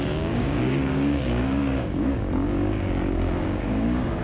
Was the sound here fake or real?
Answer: fake